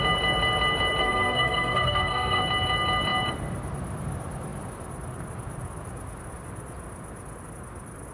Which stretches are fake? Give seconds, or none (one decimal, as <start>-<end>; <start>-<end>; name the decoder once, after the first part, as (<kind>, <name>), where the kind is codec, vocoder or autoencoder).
1.0-2.4 (codec, SNAC)